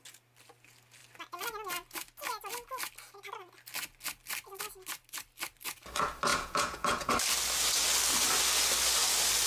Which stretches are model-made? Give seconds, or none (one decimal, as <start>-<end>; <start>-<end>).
6.3-7.1